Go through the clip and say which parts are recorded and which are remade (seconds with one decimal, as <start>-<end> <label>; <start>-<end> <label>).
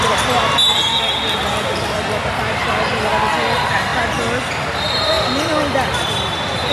0.0-6.7 recorded